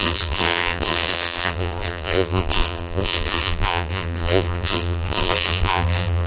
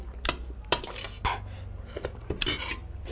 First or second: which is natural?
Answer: second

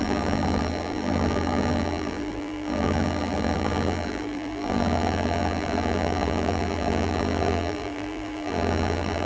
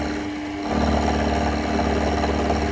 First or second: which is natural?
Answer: second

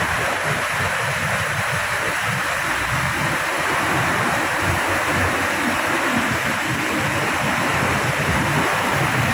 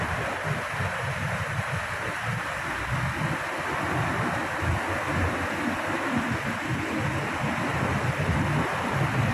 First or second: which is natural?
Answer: second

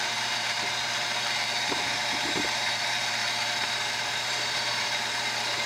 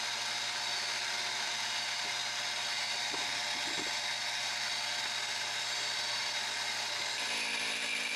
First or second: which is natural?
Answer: second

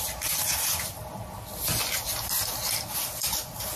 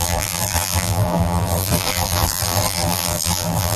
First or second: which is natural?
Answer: first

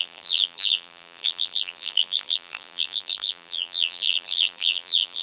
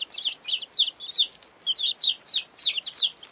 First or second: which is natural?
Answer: second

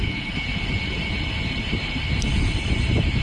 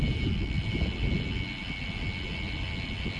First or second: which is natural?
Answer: second